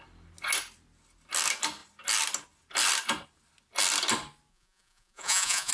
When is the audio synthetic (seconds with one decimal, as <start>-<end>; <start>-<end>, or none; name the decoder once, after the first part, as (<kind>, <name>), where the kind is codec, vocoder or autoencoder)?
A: 4.5-5.7 (vocoder, Vocos)